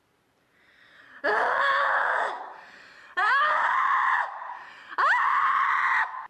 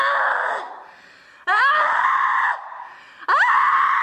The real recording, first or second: second